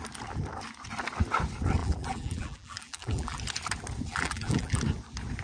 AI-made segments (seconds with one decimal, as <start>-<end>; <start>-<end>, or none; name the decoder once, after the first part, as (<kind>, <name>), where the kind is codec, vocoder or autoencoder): 1.8-3.4 (vocoder, BigVGAN v2); 4.1-4.8